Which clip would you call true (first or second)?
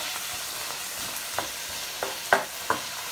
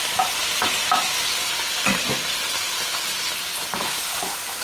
first